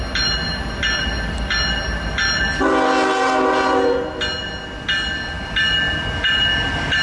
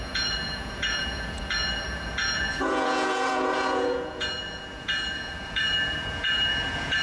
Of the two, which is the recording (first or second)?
first